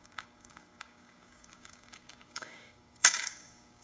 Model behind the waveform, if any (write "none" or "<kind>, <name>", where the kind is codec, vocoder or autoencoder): codec, DAC